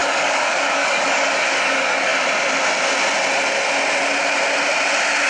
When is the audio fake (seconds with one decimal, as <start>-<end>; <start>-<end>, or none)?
0.0-2.1